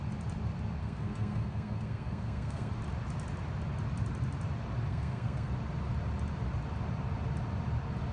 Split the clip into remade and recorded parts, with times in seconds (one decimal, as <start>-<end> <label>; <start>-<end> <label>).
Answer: 0.0-0.8 recorded; 0.8-2.7 remade; 2.7-4.9 recorded; 4.9-5.5 remade; 5.5-8.1 recorded